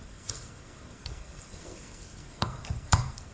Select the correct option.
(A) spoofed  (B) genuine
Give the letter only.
A